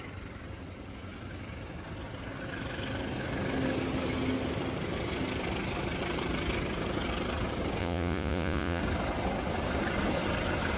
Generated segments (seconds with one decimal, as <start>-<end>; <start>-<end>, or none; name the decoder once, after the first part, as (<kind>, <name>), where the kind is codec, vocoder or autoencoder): 7.8-8.8 (vocoder, Vocos)